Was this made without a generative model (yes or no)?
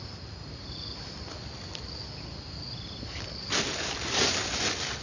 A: yes